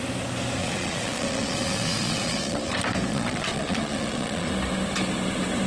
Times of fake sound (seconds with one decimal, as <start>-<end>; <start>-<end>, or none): 0.6-2.7; 3.1-4.5

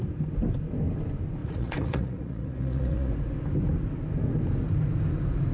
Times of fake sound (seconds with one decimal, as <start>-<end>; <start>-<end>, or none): 1.4-3.1

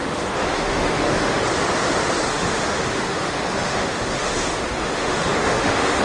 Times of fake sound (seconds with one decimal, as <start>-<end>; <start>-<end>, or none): 0.0-1.4; 2.3-6.0

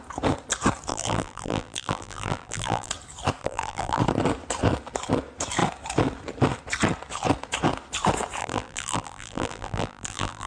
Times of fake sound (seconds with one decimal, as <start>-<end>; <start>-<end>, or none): 0.9-2.9; 3.4-4.0; 8.4-10.5